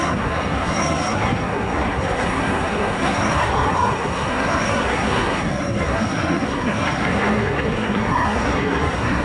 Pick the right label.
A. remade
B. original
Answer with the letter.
A